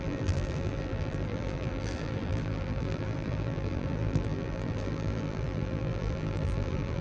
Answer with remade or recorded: remade